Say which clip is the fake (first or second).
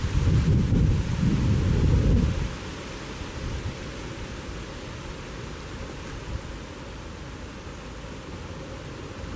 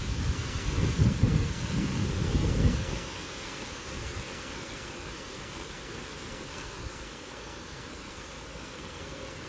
second